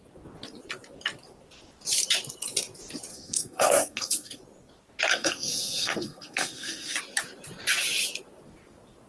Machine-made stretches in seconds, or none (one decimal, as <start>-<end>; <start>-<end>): 3.1-4.4; 5.1-7.0